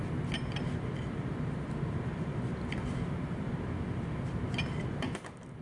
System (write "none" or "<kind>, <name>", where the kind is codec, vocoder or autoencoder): vocoder, BigVGAN v2